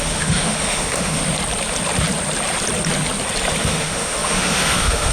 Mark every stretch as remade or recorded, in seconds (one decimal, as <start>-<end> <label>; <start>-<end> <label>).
0.0-1.2 remade; 1.2-3.6 recorded; 3.6-5.1 remade